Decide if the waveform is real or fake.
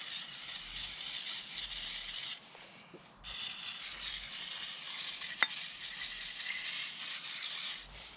real